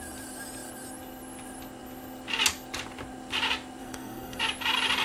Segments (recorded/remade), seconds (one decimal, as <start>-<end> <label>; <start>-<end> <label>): 0.0-3.8 recorded; 3.8-4.4 remade; 4.4-5.0 recorded